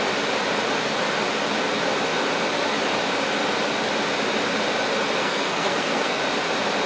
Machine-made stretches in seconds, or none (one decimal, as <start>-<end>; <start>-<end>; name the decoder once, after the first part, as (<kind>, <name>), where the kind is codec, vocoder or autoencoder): 5.2-6.2 (codec, SNAC)